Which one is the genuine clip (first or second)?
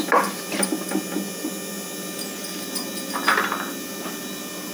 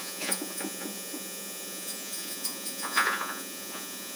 first